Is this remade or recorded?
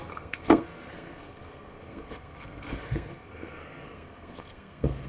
remade